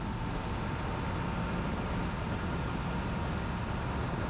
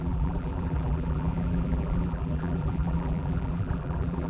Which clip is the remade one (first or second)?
second